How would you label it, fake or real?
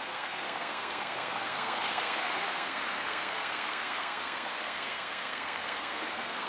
fake